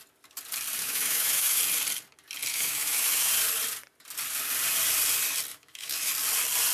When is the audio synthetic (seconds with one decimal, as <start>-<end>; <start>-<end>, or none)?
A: 0.8-1.6; 2.5-3.3; 5.5-6.1